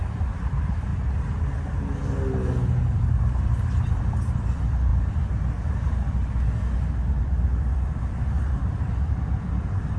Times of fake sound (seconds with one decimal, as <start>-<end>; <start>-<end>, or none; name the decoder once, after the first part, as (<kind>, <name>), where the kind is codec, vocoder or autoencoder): 0.0-0.9 (vocoder, BigVGAN v2); 2.8-4.9; 7.2-10.0